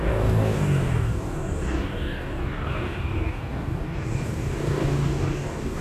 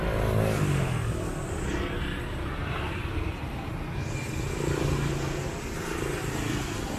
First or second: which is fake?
first